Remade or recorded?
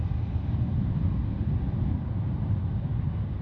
recorded